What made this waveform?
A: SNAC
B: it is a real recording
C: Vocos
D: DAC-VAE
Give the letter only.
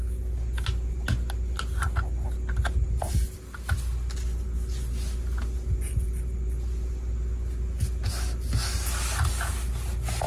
B